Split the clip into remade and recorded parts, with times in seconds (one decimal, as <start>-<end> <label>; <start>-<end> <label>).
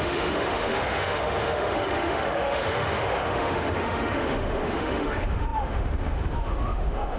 0.0-7.2 remade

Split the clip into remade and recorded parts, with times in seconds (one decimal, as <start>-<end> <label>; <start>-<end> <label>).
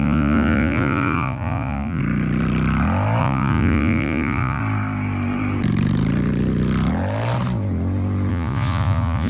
0.0-2.0 remade; 2.0-3.2 recorded; 3.2-4.6 remade; 4.6-8.3 recorded; 8.3-9.3 remade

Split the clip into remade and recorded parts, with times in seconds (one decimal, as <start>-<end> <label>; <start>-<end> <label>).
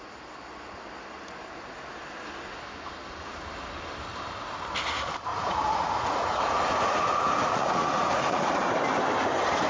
0.0-5.3 recorded; 5.3-8.6 remade; 8.6-9.7 recorded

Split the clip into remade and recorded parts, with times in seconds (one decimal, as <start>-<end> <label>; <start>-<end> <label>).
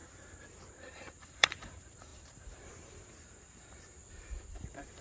0.0-0.8 recorded; 0.8-4.0 remade; 4.0-4.5 recorded; 4.5-5.0 remade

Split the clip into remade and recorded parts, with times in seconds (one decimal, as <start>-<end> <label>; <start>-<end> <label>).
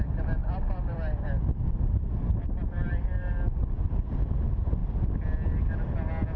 0.0-0.4 recorded; 0.4-3.3 remade; 3.3-4.8 recorded; 4.8-5.7 remade; 5.7-6.4 recorded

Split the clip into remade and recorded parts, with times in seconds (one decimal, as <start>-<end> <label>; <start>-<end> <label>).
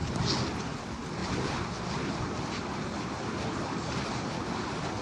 0.0-5.0 recorded